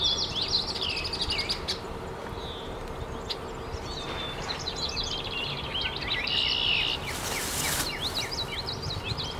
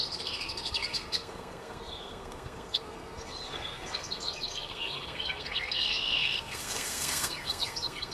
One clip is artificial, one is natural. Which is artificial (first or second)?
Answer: second